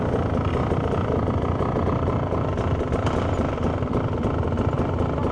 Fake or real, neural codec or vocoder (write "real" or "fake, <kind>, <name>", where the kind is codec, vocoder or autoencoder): real